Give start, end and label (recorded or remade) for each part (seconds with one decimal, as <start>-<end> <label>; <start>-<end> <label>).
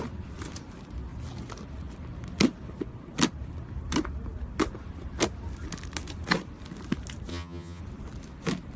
0.0-7.3 recorded; 7.3-7.8 remade; 7.8-8.8 recorded